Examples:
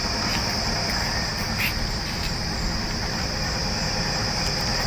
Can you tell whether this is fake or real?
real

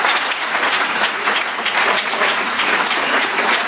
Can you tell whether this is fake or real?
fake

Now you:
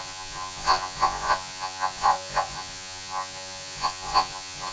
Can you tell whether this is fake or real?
fake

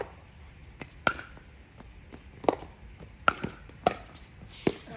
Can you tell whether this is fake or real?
real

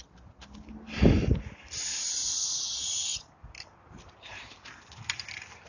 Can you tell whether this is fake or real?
real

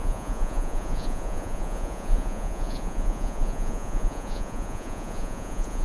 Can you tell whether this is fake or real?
fake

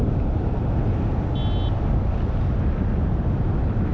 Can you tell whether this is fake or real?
real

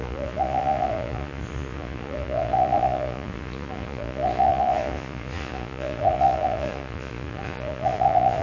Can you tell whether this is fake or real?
fake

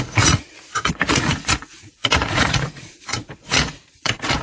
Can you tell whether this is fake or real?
fake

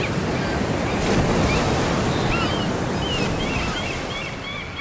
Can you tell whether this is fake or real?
real